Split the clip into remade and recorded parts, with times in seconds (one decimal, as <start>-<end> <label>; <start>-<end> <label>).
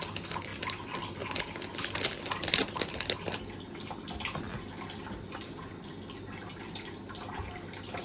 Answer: 0.0-8.0 recorded